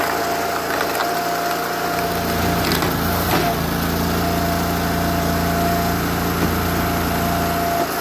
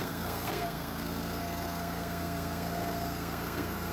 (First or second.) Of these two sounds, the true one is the first